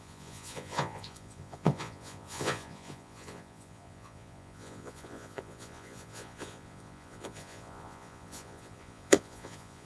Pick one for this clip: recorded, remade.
remade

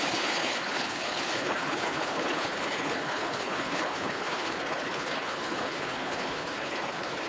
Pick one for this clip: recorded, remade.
remade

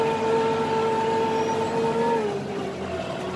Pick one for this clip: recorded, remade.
recorded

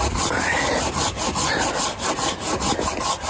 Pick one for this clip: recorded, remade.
recorded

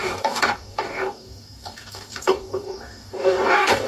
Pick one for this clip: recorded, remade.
remade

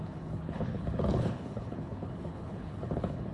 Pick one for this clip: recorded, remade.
remade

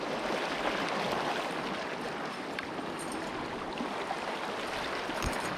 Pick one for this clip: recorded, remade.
recorded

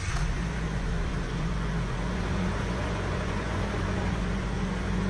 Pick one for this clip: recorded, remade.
remade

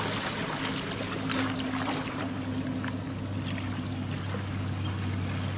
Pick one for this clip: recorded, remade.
recorded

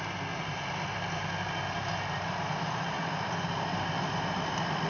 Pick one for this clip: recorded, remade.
recorded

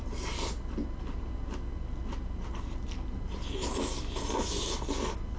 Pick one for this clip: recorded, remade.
recorded